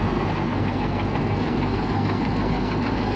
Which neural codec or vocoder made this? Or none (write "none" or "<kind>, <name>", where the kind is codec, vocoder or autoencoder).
codec, SNAC